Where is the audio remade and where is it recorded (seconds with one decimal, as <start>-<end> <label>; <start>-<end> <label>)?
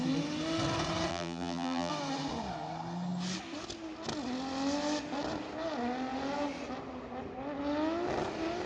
0.0-1.1 recorded; 1.1-1.9 remade; 1.9-8.7 recorded